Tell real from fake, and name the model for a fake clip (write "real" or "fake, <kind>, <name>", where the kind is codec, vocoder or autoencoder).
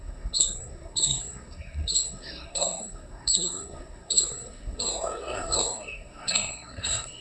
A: fake, codec, SNAC